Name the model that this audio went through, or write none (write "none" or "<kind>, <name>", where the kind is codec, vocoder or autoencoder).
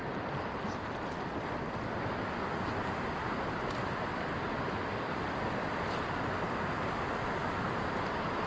none